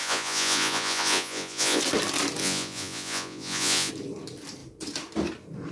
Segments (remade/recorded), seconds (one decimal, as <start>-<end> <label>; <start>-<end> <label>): 0.0-1.8 remade; 1.8-2.4 recorded; 2.4-3.9 remade; 3.9-5.7 recorded